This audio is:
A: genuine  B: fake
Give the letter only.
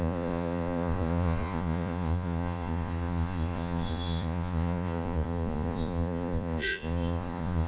B